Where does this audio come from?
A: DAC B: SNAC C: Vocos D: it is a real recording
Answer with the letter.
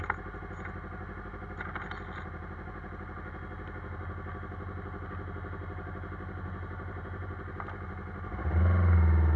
D